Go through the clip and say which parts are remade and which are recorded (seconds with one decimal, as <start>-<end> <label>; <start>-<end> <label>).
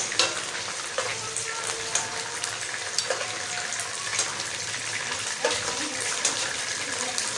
0.0-1.1 recorded; 1.1-2.1 remade; 2.1-4.1 recorded; 4.1-7.0 remade; 7.0-7.4 recorded